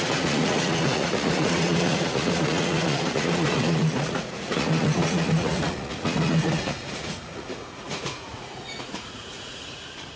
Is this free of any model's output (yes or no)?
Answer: no